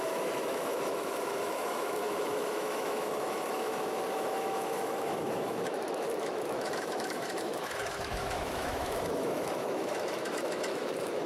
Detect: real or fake fake